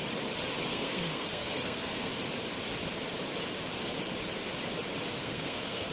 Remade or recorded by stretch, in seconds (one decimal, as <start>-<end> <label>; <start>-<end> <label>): 0.0-0.7 recorded; 0.7-2.1 remade; 2.1-5.2 recorded; 5.2-5.9 remade